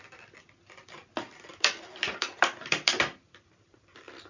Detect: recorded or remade remade